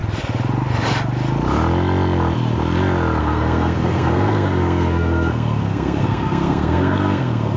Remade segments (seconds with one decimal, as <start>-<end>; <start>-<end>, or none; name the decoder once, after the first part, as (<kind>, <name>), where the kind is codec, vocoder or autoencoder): 3.2-7.6 (codec, SNAC)